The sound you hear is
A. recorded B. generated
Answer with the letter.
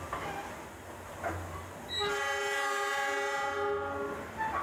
A